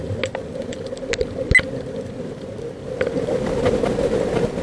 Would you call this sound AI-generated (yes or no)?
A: no